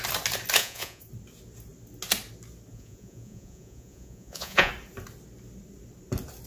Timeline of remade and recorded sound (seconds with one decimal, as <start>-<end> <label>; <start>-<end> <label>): 0.0-0.6 recorded; 0.6-1.1 remade; 1.1-2.7 recorded; 2.7-4.7 remade; 4.7-6.5 recorded

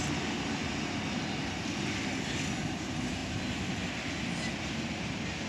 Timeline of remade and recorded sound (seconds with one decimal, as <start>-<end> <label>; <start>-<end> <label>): 0.0-5.5 recorded

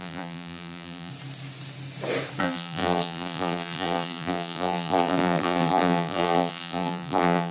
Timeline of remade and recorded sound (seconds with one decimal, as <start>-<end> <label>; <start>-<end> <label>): 0.0-1.1 remade; 1.1-2.4 recorded; 2.4-7.5 remade